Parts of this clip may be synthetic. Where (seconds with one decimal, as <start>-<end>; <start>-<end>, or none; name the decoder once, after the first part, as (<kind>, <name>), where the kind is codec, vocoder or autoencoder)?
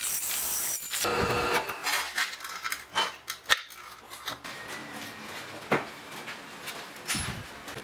none